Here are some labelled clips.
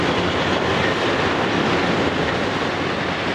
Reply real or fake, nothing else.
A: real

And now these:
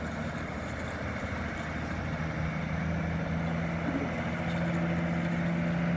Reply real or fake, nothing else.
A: real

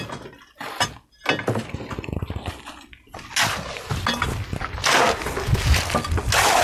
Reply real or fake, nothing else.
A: real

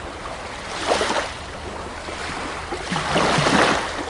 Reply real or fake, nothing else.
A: real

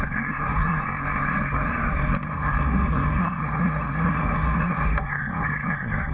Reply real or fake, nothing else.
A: fake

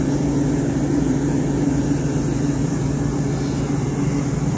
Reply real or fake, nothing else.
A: real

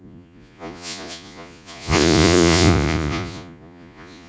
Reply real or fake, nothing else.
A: fake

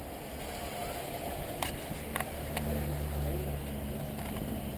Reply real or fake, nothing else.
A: real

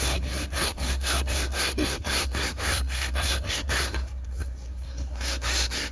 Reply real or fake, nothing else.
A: fake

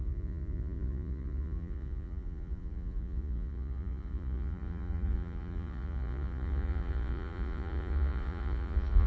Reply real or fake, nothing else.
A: fake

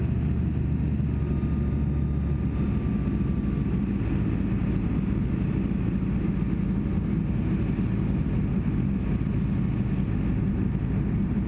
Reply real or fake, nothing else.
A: real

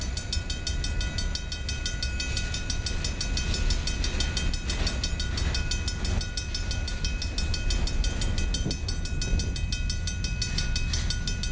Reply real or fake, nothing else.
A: real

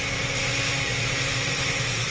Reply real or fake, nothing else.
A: real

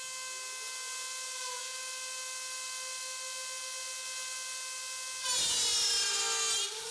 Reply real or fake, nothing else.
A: real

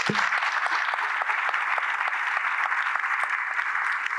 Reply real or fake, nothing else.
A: real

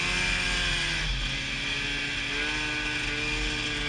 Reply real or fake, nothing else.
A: real